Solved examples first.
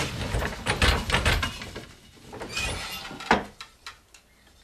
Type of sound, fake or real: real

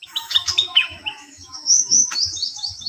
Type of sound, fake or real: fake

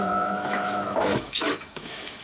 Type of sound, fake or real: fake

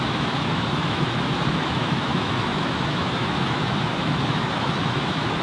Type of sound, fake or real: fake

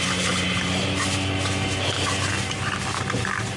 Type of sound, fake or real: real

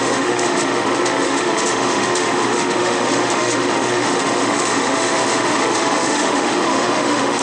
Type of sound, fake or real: fake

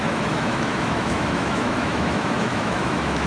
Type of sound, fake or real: fake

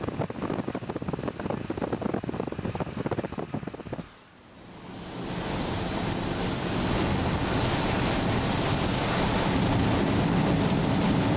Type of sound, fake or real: real